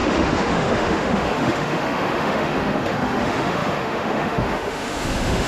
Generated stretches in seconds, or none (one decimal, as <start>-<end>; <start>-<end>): 0.0-5.5